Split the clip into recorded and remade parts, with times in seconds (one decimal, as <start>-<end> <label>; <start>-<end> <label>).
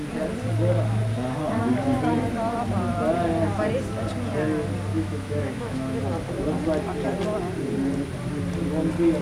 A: 0.0-4.9 recorded; 4.9-6.0 remade; 6.0-9.2 recorded